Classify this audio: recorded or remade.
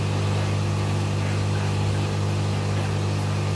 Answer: recorded